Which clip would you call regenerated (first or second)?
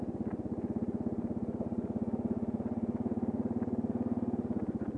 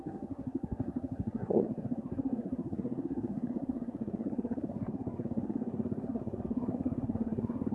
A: second